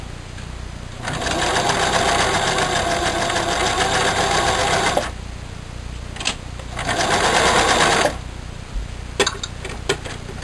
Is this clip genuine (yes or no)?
yes